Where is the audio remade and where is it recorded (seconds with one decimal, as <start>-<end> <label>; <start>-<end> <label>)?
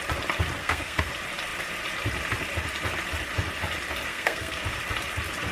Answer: 0.0-0.6 recorded; 0.6-1.1 remade; 1.1-4.1 recorded; 4.1-4.6 remade; 4.6-5.5 recorded